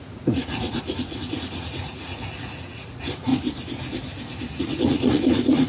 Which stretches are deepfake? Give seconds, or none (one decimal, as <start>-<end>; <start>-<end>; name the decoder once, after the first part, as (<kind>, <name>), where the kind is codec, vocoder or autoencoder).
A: 0.0-3.3 (vocoder, Vocos); 4.6-5.7